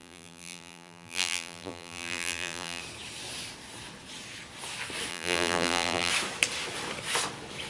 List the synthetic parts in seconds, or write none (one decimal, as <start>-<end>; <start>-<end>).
0.0-2.8; 5.1-6.1